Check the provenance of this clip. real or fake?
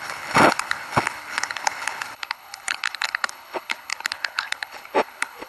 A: fake